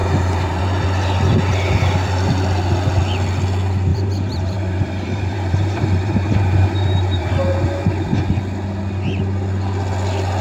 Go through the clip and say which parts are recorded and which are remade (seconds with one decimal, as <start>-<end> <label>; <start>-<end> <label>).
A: 0.0-0.6 remade; 0.6-3.9 recorded; 3.9-7.3 remade; 7.3-10.4 recorded